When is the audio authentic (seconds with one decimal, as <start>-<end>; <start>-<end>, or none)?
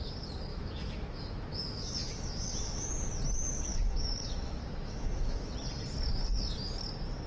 0.0-0.5; 2.9-3.7; 5.5-7.3